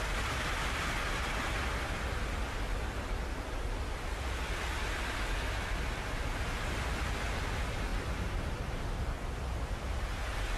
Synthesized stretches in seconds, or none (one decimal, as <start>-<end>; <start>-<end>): none